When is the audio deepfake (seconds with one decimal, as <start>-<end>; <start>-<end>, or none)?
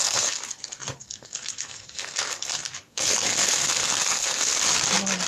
0.0-4.5